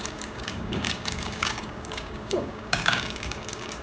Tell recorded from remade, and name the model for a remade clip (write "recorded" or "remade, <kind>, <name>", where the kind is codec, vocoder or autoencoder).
remade, codec, DAC